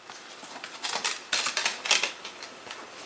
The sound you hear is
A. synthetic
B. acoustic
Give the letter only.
A